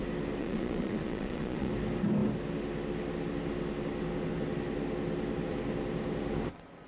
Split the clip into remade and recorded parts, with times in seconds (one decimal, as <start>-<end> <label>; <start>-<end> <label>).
0.0-0.4 recorded; 0.4-1.7 remade; 1.7-6.9 recorded